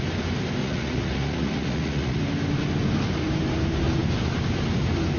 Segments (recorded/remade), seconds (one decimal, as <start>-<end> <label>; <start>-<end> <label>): 0.0-0.6 recorded; 0.6-2.2 remade; 2.2-5.2 recorded